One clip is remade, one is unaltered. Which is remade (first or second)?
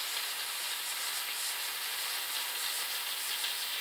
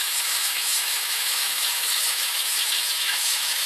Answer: second